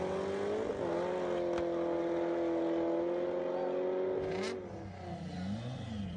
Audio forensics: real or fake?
real